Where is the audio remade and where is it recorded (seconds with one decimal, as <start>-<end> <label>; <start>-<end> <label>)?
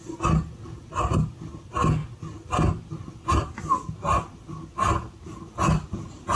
0.0-6.4 recorded